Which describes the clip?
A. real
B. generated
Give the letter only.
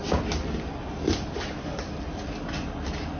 A